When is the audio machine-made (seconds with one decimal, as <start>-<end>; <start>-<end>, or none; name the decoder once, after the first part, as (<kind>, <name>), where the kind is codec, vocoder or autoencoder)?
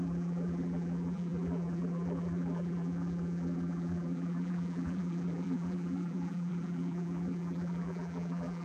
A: 0.0-8.6 (vocoder, BigVGAN v2)